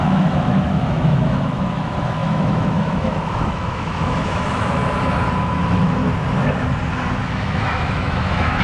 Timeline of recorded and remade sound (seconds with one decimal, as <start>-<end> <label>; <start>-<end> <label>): 0.0-4.8 remade; 4.8-5.4 recorded; 5.4-6.0 remade; 6.0-7.2 recorded; 7.2-8.6 remade